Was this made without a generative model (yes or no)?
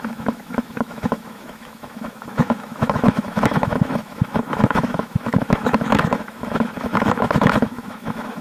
no